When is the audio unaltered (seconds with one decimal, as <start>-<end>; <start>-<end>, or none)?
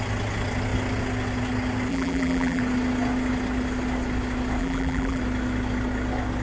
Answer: 0.0-1.9; 2.6-4.6; 5.2-6.4